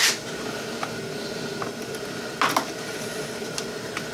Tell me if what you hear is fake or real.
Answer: real